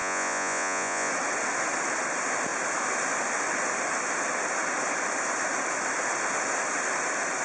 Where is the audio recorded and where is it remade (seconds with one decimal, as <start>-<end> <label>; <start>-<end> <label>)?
0.0-1.1 remade; 1.1-7.4 recorded